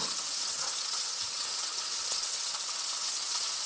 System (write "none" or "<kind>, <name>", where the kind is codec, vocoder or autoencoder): vocoder, WaveNeXt